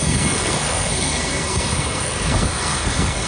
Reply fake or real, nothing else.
fake